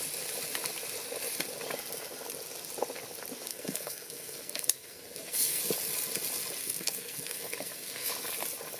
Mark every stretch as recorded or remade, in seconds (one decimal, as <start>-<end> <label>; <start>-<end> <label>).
0.0-3.5 recorded; 3.5-5.6 remade; 5.6-6.6 recorded; 6.6-8.1 remade; 8.1-8.8 recorded